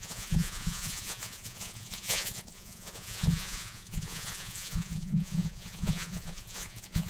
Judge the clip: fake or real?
fake